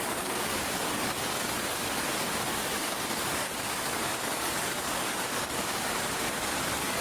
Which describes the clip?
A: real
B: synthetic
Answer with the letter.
B